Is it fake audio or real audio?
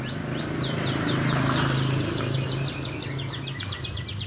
real